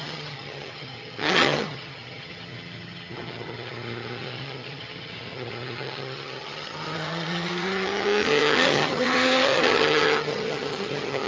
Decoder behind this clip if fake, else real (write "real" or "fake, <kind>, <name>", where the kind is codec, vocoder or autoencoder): fake, vocoder, HiFi-GAN